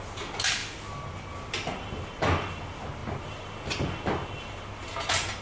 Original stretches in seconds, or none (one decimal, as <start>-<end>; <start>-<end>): 0.0-5.4